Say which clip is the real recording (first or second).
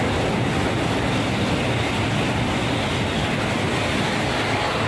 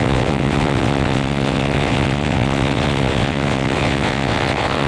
first